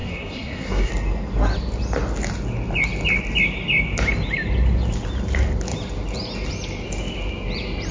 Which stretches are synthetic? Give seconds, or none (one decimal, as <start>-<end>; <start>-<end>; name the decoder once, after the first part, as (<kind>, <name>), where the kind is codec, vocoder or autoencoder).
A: 0.0-0.9 (codec, SNAC)